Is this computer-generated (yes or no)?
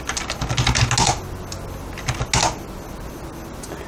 no